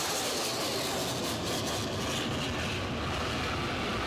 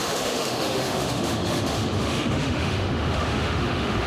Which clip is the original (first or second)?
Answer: first